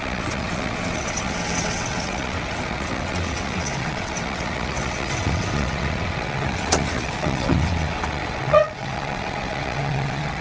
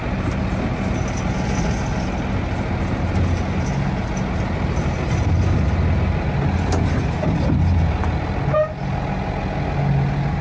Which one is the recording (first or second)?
second